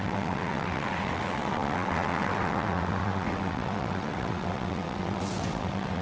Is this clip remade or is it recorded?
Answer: remade